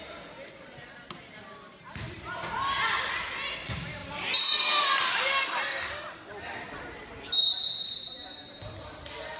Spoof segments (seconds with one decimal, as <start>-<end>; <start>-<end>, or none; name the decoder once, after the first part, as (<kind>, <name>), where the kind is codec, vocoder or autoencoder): none